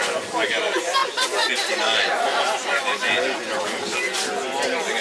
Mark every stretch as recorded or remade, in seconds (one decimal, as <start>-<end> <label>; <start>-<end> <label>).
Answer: 0.0-2.3 remade; 2.3-3.6 recorded; 3.6-5.0 remade